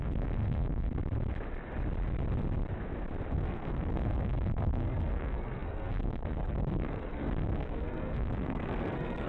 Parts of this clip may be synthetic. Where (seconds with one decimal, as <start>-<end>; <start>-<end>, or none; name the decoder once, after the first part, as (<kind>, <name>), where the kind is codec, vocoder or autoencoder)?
0.0-1.0 (codec, SNAC); 3.3-9.3